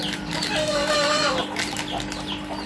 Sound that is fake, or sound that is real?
real